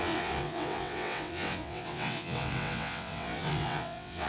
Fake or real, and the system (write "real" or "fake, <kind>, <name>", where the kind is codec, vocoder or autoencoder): fake, vocoder, WaveNeXt